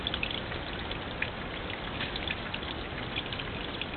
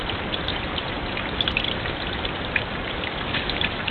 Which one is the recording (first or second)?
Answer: first